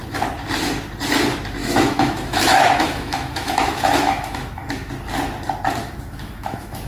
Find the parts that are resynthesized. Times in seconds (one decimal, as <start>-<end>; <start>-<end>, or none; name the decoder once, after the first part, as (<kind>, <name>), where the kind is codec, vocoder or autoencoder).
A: 1.6-4.9 (autoencoder, DAC-VAE); 5.8-6.9